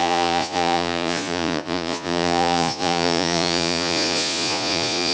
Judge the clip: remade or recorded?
remade